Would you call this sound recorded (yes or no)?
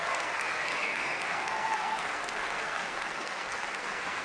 no